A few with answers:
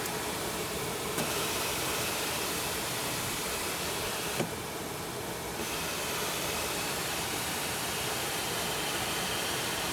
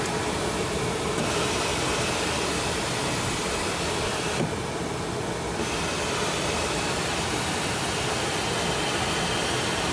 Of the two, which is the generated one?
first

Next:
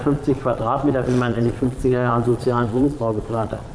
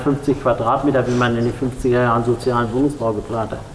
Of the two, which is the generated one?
first